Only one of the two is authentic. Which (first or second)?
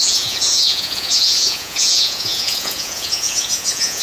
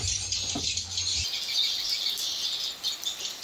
second